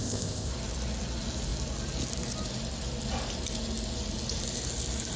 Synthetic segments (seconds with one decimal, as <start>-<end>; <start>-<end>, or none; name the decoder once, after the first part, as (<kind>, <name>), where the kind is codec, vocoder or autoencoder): 0.0-0.5 (codec, ZipCodec)